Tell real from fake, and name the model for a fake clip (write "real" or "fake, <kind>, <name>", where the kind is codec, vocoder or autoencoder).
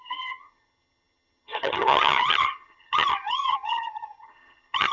fake, vocoder, HiFi-GAN